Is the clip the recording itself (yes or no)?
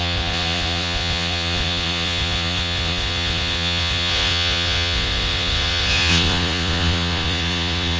no